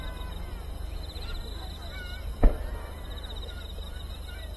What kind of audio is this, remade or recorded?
recorded